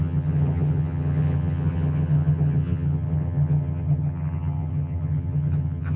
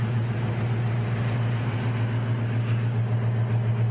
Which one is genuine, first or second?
second